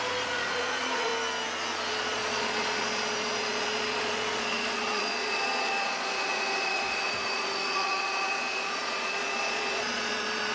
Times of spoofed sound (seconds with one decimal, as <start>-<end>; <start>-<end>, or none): 0.0-1.1; 1.9-10.5